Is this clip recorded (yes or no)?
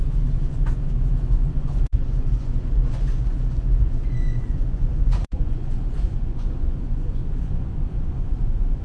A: no